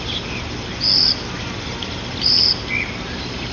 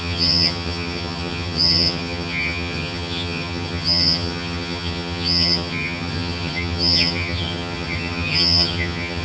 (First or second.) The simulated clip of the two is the second